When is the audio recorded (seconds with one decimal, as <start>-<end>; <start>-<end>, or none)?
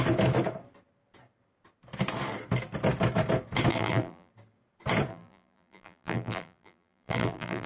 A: 0.0-3.7; 4.3-5.1